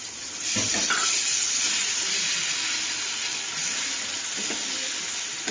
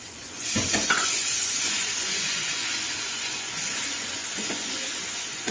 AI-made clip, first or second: second